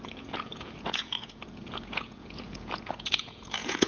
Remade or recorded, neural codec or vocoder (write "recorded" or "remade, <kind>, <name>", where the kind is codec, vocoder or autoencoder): remade, vocoder, Vocos